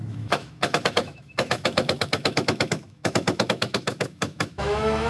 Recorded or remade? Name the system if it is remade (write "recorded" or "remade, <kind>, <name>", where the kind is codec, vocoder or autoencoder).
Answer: remade, autoencoder, DAC-VAE